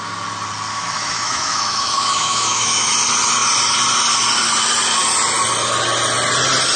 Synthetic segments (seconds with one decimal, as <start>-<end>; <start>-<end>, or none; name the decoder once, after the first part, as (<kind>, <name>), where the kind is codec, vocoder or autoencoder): 0.7-2.9 (autoencoder, DAC-VAE)